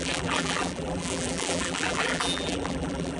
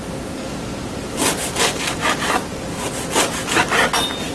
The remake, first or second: first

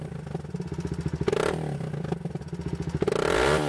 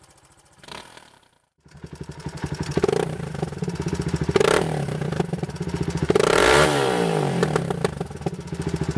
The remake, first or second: second